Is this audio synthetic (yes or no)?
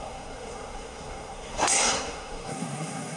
yes